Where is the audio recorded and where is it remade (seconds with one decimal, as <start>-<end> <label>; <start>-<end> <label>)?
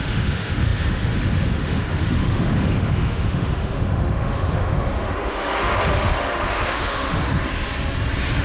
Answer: 0.0-7.3 remade; 7.3-8.4 recorded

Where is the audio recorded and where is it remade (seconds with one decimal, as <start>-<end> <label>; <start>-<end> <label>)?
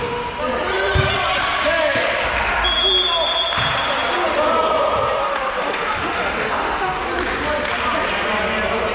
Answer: 0.0-5.2 recorded; 5.2-7.0 remade; 7.0-8.9 recorded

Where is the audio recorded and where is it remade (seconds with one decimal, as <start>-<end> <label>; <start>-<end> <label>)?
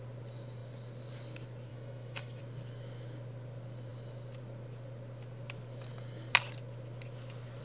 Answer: 0.0-1.7 recorded; 1.7-2.4 remade; 2.4-7.6 recorded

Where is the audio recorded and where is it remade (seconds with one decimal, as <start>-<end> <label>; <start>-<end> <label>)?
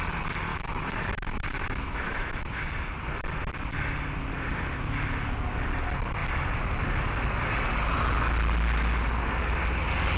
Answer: 0.0-0.5 recorded; 0.5-2.7 remade; 2.7-10.2 recorded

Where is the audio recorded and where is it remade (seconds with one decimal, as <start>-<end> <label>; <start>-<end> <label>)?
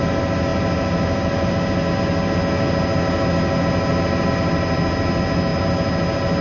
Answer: 0.0-6.4 recorded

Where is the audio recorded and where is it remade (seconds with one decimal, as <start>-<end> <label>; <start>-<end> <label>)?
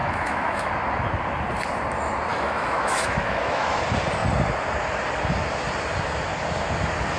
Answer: 0.0-0.7 remade; 0.7-2.3 recorded; 2.3-3.8 remade; 3.8-7.2 recorded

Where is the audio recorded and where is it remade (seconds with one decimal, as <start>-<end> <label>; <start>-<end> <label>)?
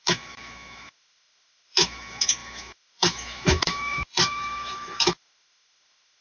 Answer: 0.0-6.2 remade